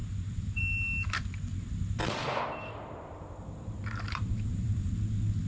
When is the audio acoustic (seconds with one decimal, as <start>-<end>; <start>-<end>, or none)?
0.6-2.0; 4.9-5.5